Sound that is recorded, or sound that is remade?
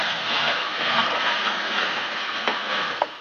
remade